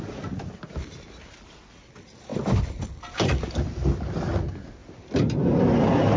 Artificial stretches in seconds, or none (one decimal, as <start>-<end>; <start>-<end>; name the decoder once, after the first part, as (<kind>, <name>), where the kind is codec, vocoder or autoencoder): none